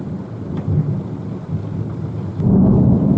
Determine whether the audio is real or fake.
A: real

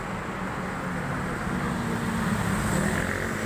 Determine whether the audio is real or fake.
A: real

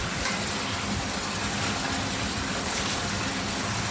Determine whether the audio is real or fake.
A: real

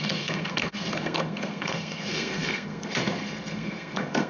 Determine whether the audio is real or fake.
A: fake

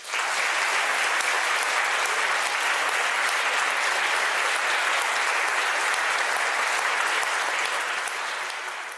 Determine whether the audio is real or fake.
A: real